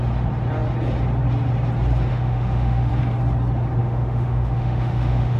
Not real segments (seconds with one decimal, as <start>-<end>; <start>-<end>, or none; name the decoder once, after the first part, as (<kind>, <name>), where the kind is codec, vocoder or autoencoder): 2.1-2.9 (autoencoder, DAC-VAE); 3.8-5.4